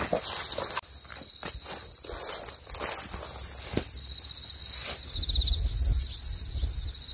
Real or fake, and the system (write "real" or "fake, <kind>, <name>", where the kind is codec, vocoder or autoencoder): real